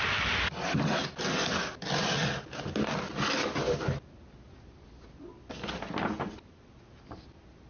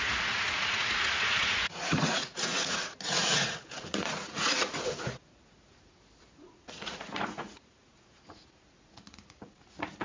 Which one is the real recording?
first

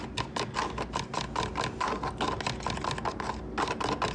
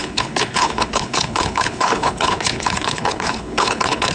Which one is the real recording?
first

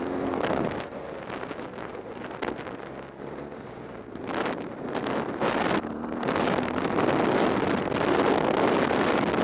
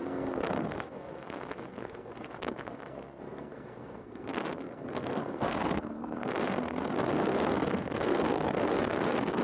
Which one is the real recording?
first